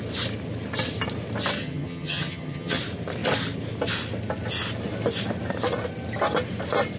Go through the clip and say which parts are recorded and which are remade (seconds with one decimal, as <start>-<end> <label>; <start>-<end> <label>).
0.0-1.6 recorded; 1.6-2.8 remade; 2.8-7.0 recorded